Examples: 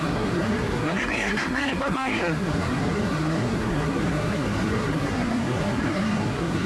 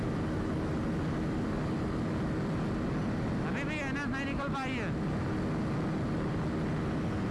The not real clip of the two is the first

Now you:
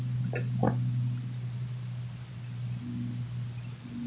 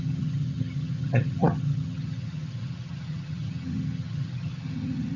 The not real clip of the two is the second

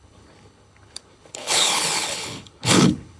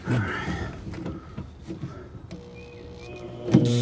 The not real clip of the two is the first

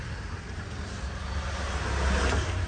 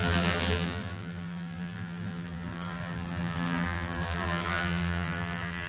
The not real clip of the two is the second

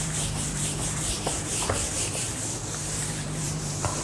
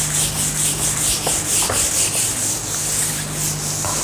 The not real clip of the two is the first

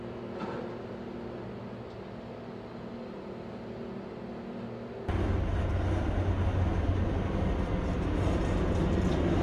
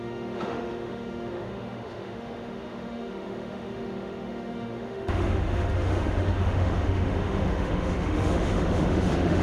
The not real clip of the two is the second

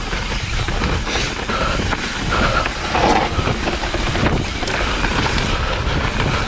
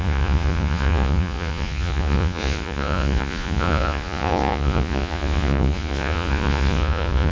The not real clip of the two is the second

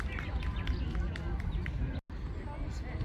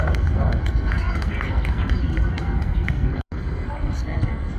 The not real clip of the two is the second